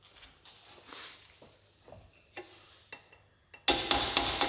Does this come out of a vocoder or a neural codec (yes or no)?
no